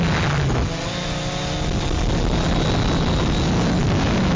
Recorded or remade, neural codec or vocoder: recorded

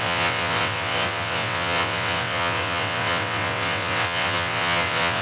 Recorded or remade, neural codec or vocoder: remade, vocoder, WaveNeXt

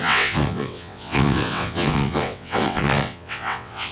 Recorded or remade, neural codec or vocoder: remade, vocoder, WaveNeXt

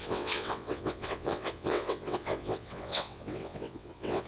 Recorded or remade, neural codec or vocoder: remade, vocoder, WaveNeXt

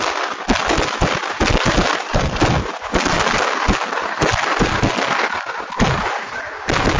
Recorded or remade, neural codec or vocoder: recorded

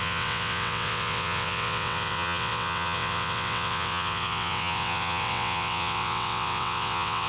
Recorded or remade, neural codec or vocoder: remade, vocoder, WaveNeXt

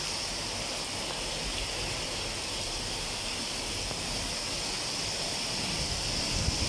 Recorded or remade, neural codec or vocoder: recorded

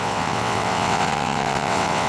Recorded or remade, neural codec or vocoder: remade, vocoder, WaveNeXt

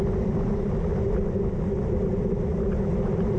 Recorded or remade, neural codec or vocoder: recorded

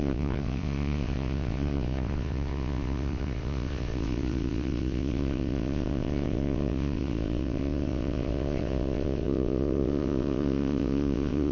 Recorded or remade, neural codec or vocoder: remade, vocoder, WaveNeXt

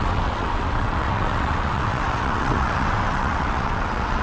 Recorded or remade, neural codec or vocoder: remade, vocoder, WaveNeXt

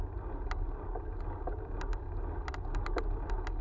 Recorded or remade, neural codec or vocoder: recorded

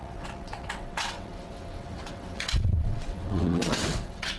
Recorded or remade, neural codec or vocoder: remade, vocoder, WaveNeXt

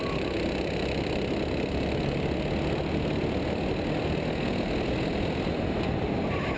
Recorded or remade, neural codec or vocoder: recorded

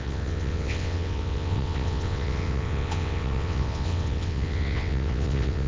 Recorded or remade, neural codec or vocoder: remade, vocoder, WaveNeXt